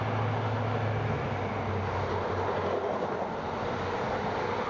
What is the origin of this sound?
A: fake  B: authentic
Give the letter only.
B